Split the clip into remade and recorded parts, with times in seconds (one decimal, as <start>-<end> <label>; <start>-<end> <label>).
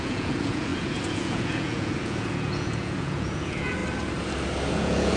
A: 0.0-3.8 remade; 3.8-4.7 recorded; 4.7-5.2 remade